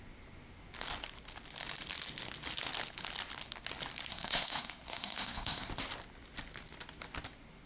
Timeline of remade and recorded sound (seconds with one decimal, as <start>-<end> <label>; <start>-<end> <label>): 0.0-4.1 recorded; 4.1-5.7 remade; 5.7-7.7 recorded